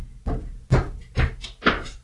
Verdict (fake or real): real